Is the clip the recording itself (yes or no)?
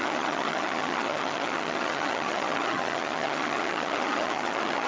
no